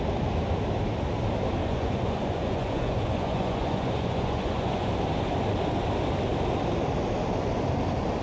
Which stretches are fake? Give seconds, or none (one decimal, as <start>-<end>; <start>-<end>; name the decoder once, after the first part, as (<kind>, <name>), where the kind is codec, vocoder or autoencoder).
1.6-4.9 (vocoder, Vocos)

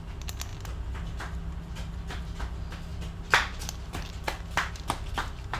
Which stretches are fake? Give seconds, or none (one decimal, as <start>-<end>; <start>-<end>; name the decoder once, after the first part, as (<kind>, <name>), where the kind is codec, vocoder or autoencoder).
none